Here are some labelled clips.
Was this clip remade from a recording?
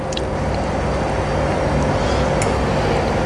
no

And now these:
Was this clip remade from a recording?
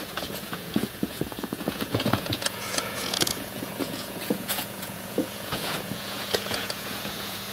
yes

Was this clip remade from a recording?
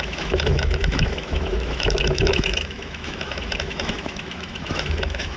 yes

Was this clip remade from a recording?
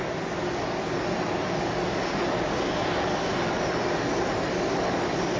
no